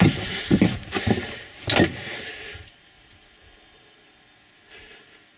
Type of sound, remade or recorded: recorded